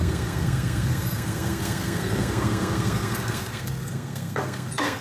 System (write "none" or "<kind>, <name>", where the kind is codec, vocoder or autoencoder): codec, SNAC